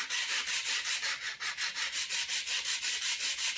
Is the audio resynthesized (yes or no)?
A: no